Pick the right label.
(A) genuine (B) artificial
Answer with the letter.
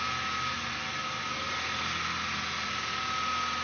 A